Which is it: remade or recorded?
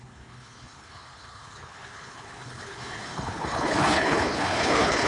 remade